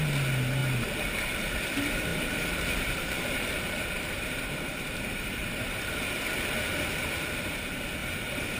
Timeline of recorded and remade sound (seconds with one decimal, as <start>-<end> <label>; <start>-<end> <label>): 0.0-2.1 recorded; 2.1-5.9 remade; 5.9-8.0 recorded; 8.0-8.6 remade